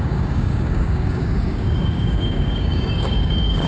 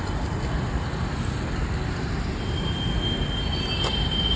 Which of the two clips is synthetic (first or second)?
first